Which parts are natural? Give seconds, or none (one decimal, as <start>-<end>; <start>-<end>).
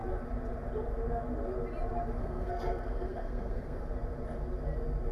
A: 0.0-2.2; 3.8-5.1